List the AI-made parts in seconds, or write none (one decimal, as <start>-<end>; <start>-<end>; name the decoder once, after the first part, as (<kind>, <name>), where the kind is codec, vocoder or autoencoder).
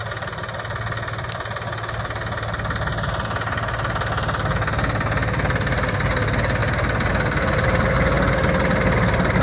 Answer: none